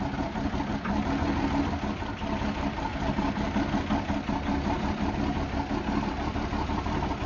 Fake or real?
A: real